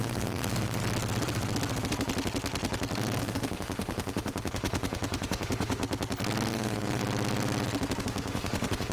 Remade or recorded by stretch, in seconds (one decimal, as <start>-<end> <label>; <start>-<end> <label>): 0.0-0.8 remade; 0.8-3.2 recorded; 3.2-5.8 remade; 5.8-6.5 recorded; 6.5-7.0 remade; 7.0-8.0 recorded; 8.0-8.9 remade